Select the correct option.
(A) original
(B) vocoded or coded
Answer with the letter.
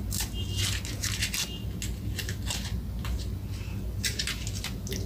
A